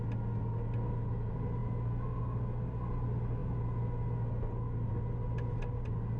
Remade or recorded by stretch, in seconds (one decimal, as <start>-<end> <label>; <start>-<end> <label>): 0.0-6.2 recorded